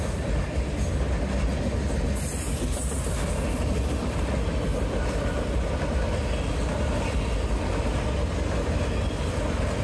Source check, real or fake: real